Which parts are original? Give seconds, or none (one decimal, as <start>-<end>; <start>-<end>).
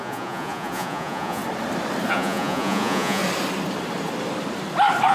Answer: 1.4-2.1; 3.2-5.1